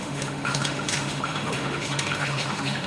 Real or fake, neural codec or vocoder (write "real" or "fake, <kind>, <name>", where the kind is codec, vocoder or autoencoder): fake, autoencoder, DAC-VAE